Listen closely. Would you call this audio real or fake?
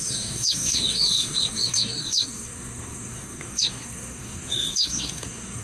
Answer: fake